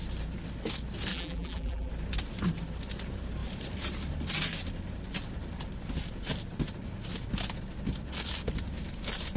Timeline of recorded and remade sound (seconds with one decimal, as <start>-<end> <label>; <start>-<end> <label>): 0.0-1.1 recorded; 1.1-1.9 remade; 1.9-9.4 recorded